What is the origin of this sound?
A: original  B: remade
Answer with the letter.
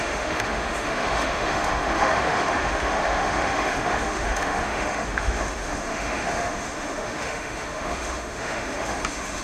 B